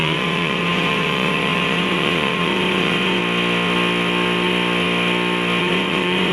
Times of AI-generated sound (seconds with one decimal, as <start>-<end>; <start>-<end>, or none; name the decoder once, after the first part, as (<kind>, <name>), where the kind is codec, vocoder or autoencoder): 0.0-3.2 (vocoder, Vocos); 5.6-6.3